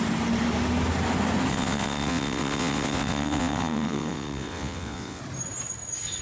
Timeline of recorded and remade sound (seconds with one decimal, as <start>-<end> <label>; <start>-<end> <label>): 0.0-1.5 recorded; 1.5-5.2 remade; 5.2-6.2 recorded